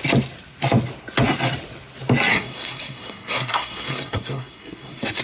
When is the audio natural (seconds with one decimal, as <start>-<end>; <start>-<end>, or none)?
0.0-2.3